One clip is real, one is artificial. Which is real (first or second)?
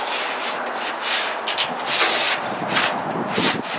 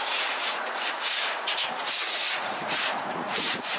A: first